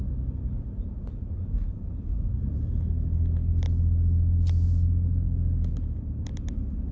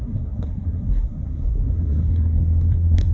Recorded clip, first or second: first